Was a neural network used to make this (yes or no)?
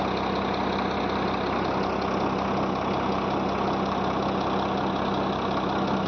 no